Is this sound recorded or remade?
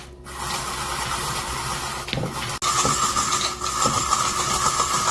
recorded